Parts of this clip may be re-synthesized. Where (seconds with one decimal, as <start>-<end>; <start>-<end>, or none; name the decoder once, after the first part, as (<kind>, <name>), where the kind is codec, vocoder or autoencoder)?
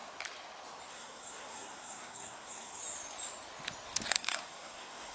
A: 0.9-2.8 (codec, SNAC); 4.1-5.1